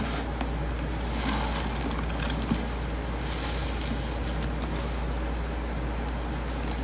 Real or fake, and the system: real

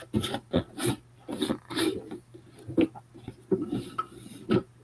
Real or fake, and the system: real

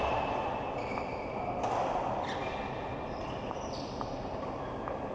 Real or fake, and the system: real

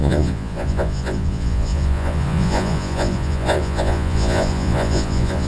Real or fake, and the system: fake, vocoder, Vocos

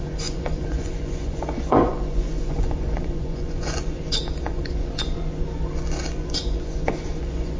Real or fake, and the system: fake, vocoder, Vocos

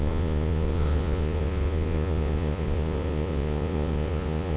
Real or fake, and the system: fake, vocoder, Vocos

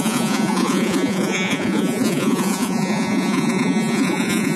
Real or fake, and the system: fake, vocoder, Vocos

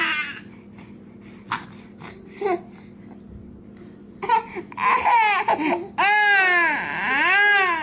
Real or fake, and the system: real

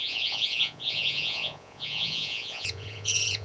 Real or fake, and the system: fake, vocoder, Vocos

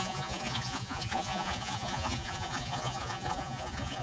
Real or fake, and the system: fake, vocoder, Vocos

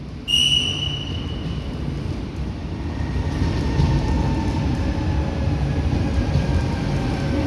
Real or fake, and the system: real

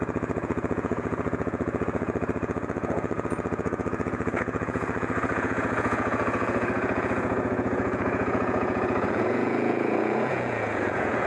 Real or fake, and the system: fake, vocoder, Vocos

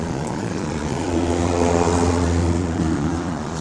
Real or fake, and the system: fake, vocoder, Vocos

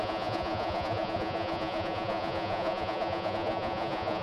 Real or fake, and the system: fake, vocoder, Vocos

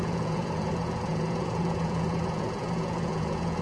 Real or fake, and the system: fake, vocoder, Vocos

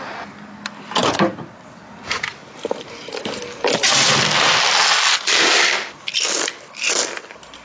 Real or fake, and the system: real